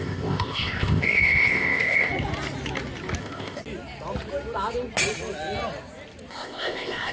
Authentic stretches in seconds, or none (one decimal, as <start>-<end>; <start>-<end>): 2.1-3.2; 3.6-6.3